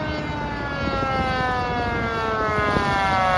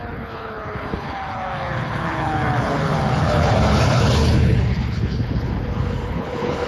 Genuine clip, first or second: first